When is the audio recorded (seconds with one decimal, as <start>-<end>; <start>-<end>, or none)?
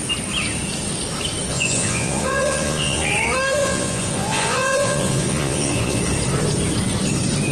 0.0-1.5; 3.1-3.6; 6.0-7.5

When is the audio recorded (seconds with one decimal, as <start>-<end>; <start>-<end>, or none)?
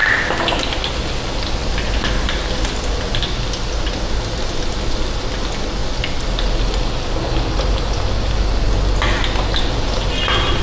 0.0-10.6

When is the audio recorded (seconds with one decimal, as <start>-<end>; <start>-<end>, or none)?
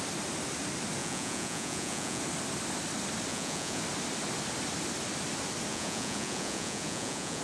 0.0-1.0; 2.2-3.3; 3.8-5.7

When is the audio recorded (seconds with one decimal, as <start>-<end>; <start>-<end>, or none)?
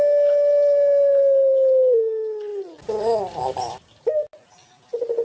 0.0-5.2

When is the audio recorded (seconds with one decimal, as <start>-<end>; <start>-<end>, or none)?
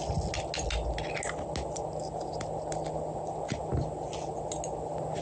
0.0-5.2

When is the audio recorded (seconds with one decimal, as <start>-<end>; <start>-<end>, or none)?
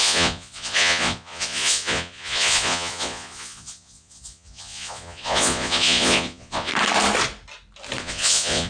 6.7-8.0